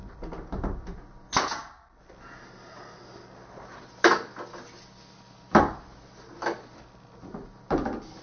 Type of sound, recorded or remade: recorded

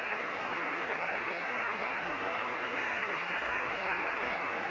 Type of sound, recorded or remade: remade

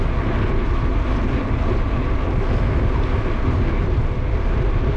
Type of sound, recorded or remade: recorded